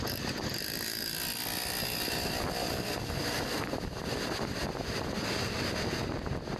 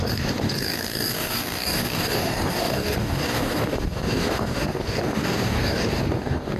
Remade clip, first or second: second